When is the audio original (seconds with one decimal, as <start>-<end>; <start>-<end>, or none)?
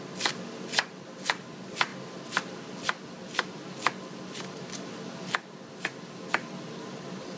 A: 0.0-7.4